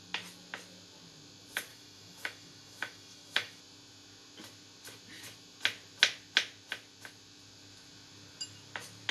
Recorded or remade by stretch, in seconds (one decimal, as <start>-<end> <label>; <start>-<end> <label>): 0.0-1.7 recorded; 1.7-3.6 remade; 3.6-9.1 recorded